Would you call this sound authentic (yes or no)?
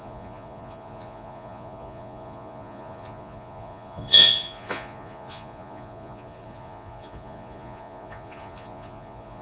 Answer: no